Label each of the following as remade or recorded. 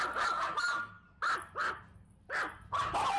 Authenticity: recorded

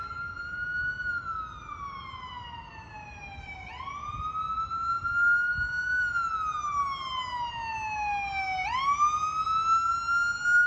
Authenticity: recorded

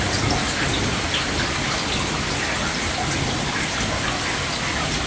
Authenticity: recorded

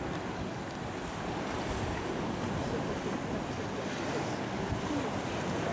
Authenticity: recorded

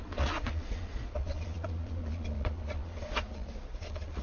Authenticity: remade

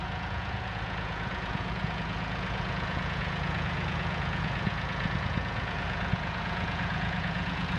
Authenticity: remade